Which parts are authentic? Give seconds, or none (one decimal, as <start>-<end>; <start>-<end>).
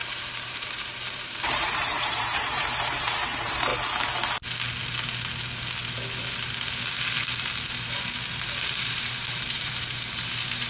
3.7-8.6